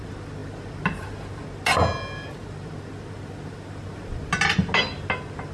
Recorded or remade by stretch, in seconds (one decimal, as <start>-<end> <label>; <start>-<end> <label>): 0.0-5.5 recorded